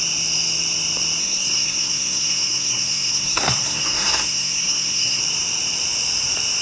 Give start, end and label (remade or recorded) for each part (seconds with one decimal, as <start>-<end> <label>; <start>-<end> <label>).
0.0-1.2 recorded; 1.2-5.2 remade; 5.2-6.6 recorded